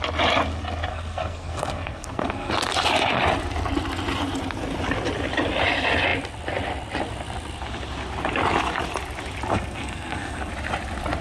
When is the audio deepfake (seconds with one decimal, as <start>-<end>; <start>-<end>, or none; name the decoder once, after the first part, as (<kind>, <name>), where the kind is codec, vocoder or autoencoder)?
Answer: 0.9-2.5 (codec, SNAC); 9.5-10.5